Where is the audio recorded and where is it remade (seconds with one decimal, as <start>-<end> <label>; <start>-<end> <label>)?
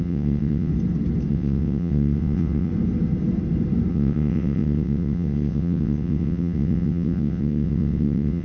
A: 0.0-0.7 remade; 0.7-1.3 recorded; 1.3-2.7 remade; 2.7-3.9 recorded; 3.9-8.4 remade